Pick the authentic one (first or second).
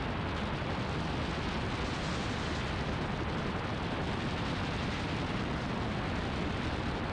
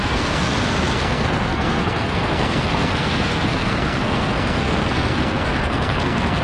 first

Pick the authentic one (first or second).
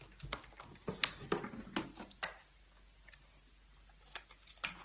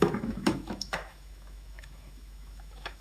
first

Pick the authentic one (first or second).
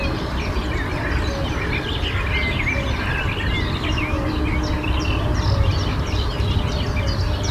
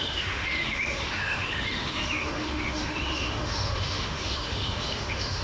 first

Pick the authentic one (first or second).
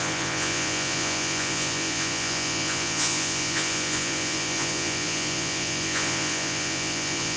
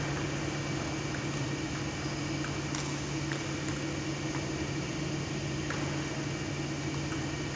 second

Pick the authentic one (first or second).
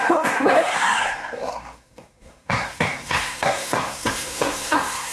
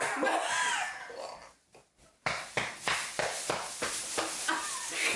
second